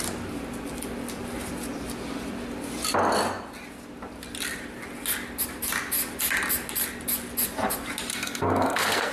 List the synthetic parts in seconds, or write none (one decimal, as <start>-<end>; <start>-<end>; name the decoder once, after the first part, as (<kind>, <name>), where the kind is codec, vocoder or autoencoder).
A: 8.1-9.1 (codec, SNAC)